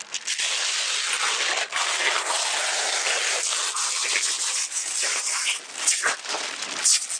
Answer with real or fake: real